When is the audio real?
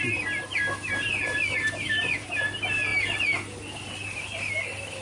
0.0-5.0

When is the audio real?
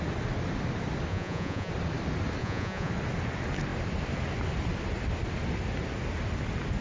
0.0-1.1; 1.7-2.4; 2.9-6.8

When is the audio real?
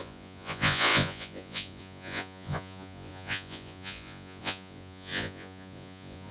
none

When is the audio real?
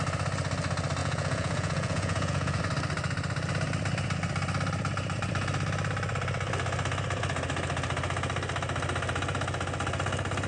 0.0-1.0; 2.6-10.5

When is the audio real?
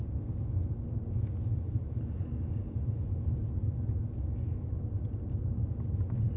0.0-6.4